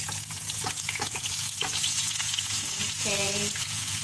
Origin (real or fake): fake